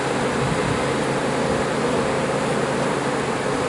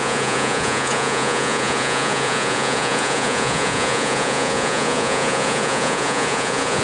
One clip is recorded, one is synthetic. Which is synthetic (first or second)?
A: second